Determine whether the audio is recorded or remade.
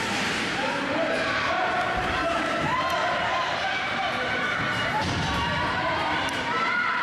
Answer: remade